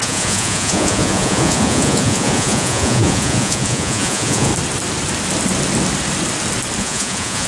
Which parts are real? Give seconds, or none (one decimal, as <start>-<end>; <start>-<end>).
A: 4.5-6.8